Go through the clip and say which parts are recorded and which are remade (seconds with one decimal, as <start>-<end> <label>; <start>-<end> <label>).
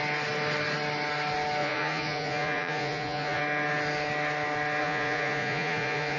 0.0-1.6 recorded; 1.6-3.4 remade; 3.4-4.8 recorded; 4.8-6.2 remade